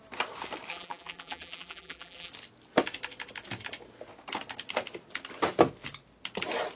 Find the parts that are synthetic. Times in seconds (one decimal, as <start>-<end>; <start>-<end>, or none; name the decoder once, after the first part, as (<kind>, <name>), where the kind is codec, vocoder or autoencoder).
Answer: 0.7-2.3 (vocoder, BigVGAN v2)